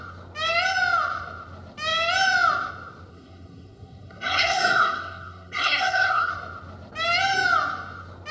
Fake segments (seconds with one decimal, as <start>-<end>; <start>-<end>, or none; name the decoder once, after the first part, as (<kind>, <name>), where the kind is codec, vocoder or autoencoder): 3.1-6.3 (codec, SNAC)